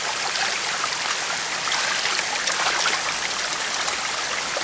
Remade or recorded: recorded